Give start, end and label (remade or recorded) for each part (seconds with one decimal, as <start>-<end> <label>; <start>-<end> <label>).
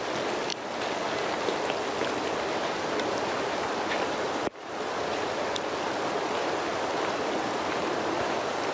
0.0-0.5 remade; 0.5-2.0 recorded; 2.0-8.7 remade